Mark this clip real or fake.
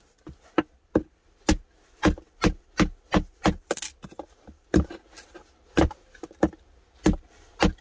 real